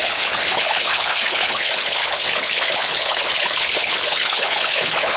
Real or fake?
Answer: fake